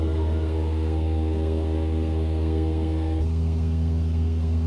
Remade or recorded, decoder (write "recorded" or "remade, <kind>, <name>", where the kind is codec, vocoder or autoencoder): remade, codec, SNAC